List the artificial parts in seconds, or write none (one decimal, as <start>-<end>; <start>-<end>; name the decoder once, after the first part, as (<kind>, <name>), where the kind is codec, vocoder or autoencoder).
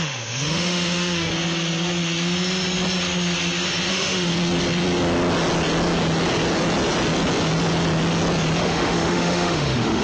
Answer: 0.0-1.3 (autoencoder, DAC-VAE); 3.9-4.3; 8.6-10.0